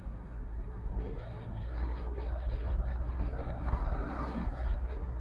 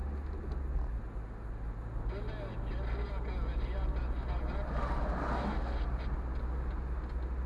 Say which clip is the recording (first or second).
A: second